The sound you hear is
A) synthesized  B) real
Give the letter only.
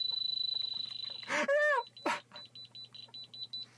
B